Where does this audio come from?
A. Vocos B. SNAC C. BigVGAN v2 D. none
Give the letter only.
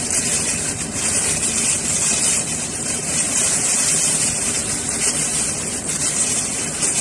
C